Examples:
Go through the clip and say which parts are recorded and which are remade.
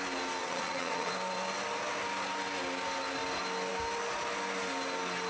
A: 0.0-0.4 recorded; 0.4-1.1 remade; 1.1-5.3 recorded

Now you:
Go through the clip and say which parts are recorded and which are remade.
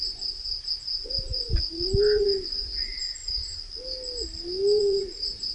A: 0.0-3.2 remade; 3.2-4.8 recorded; 4.8-5.5 remade